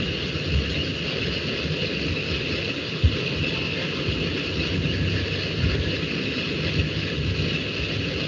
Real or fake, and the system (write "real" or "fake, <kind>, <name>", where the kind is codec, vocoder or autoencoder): real